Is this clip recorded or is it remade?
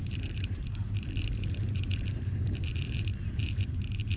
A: remade